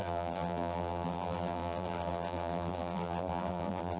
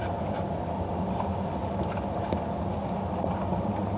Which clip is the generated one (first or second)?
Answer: first